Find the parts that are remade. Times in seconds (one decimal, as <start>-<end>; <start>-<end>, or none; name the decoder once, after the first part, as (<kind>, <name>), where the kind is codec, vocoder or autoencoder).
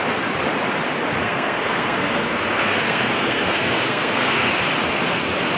1.2-4.5 (codec, SNAC)